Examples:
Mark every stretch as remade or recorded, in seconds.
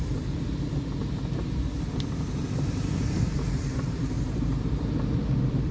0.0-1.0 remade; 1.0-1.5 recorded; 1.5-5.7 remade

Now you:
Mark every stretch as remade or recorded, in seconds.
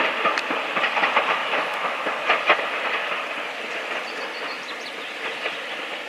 0.0-1.4 recorded; 1.4-2.0 remade; 2.0-6.1 recorded